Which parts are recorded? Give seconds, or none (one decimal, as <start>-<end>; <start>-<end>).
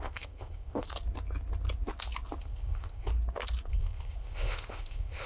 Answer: 0.8-2.4; 3.1-3.7